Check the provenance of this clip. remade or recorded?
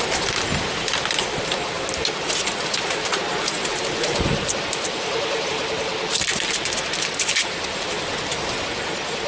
recorded